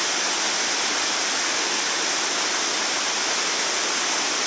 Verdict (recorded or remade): recorded